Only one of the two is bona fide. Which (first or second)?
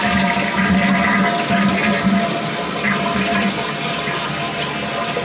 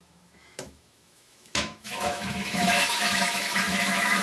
first